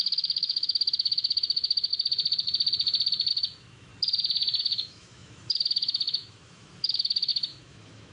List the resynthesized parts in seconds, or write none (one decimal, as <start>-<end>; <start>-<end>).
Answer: 0.0-1.9; 3.3-3.9; 4.6-8.1